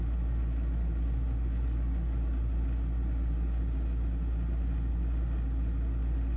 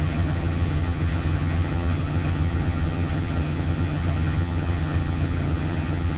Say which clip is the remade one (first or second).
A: second